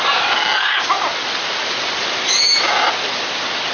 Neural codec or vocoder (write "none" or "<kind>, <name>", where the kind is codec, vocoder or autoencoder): none